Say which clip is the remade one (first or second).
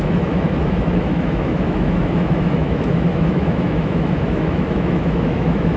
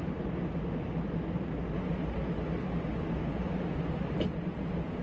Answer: first